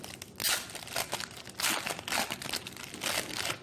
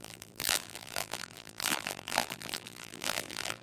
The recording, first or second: first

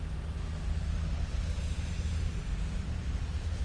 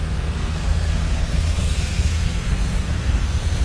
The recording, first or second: first